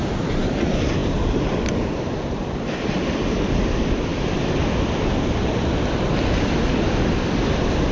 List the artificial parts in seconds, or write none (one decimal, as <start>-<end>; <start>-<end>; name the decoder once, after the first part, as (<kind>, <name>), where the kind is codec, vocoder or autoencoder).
1.0-2.2 (vocoder, BigVGAN v2)